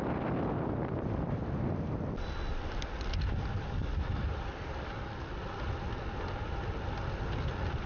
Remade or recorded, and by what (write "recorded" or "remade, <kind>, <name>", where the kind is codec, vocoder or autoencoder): recorded